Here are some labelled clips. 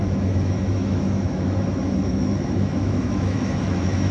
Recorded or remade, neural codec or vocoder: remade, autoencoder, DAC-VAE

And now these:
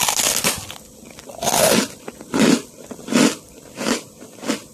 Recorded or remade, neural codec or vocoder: recorded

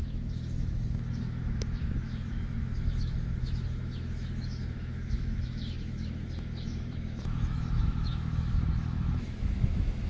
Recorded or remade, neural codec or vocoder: remade, autoencoder, DAC-VAE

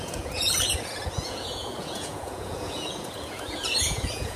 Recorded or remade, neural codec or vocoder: remade, vocoder, Vocos